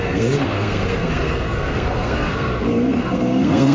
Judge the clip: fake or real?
fake